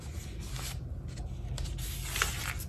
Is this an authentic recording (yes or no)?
yes